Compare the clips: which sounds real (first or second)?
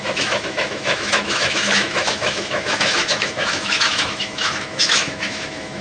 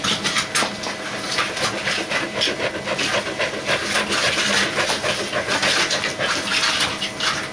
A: second